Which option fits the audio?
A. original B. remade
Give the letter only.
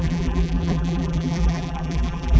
B